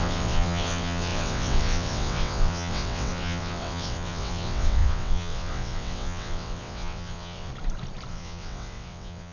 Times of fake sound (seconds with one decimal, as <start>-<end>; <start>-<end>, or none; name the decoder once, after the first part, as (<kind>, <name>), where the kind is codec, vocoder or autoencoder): 0.0-7.5 (vocoder, WaveNeXt); 8.1-9.3